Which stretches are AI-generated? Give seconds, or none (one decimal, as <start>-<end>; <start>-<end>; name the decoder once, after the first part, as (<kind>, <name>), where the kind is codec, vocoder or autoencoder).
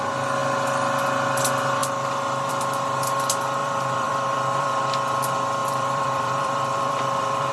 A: 3.6-4.8 (vocoder, BigVGAN v2); 5.6-7.5